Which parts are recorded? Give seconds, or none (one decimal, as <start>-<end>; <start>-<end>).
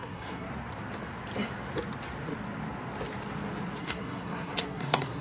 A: 0.5-3.8